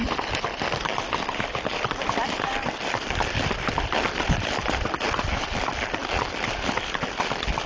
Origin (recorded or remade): remade